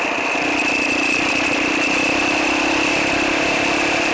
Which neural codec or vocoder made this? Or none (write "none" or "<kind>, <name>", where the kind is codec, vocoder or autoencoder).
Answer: vocoder, BigVGAN v2